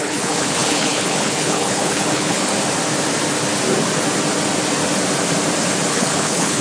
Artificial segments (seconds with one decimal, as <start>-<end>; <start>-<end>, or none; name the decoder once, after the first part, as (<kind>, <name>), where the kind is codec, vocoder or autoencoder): 0.0-2.5 (codec, HILCodec); 5.9-6.6